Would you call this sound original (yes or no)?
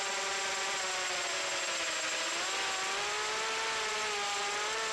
yes